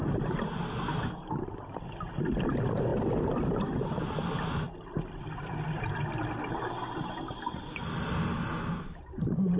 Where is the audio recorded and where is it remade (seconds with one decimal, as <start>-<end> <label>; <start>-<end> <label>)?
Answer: 0.0-9.6 recorded